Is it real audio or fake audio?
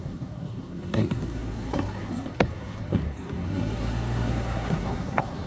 fake